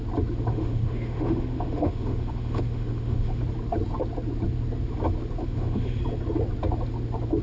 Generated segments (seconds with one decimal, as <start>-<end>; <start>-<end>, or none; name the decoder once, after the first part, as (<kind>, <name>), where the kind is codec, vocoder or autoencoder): 0.5-3.4 (autoencoder, DAC-VAE); 5.4-6.0